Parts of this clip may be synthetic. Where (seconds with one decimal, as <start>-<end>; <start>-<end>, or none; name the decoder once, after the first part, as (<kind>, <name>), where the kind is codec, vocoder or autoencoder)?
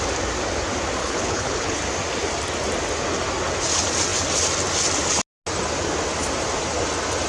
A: 1.0-1.8 (codec, HILCodec)